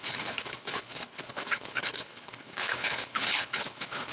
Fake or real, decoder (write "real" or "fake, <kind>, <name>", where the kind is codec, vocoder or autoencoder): fake, codec, HILCodec